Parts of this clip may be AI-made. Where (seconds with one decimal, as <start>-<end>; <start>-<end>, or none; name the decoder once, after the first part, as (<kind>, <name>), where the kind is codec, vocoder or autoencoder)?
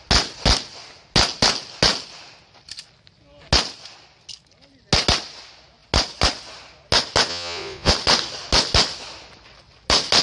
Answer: 7.3-7.9 (vocoder, Vocos)